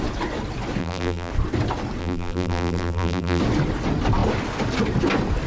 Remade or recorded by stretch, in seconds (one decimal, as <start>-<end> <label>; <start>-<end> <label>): 0.0-0.8 recorded; 0.8-1.3 remade; 1.3-2.0 recorded; 2.0-3.4 remade; 3.4-5.5 recorded